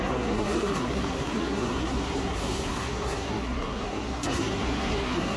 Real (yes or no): no